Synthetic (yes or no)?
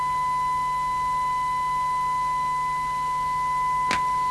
no